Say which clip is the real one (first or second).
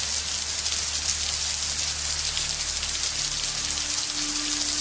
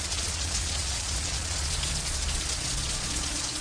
first